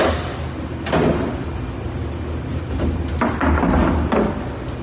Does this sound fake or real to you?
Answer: real